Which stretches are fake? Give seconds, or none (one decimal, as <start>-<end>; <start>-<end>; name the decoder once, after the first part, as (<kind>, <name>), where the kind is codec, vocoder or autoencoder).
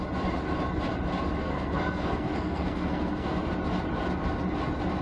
1.4-3.5 (codec, SNAC)